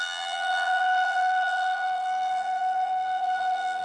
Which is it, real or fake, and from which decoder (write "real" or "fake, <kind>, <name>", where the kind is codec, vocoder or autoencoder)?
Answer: fake, vocoder, BigVGAN v2